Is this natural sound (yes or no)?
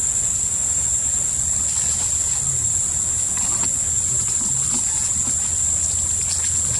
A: yes